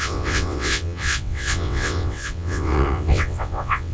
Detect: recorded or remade remade